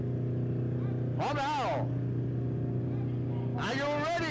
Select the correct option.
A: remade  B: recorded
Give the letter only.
B